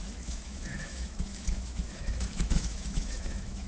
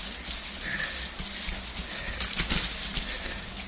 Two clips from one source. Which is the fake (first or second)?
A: first